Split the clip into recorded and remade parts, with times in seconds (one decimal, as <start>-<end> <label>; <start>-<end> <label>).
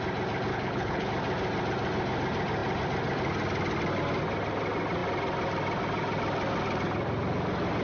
0.0-0.5 recorded; 0.5-1.1 remade; 1.1-7.8 recorded